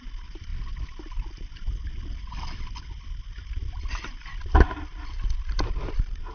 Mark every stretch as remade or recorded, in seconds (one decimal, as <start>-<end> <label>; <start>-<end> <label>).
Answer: 0.0-6.3 recorded